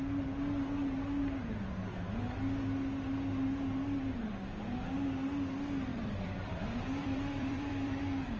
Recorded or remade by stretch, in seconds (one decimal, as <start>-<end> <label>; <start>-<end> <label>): 0.0-5.9 recorded; 5.9-8.0 remade; 8.0-8.4 recorded